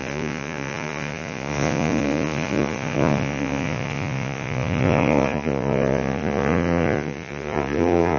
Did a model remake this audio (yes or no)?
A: yes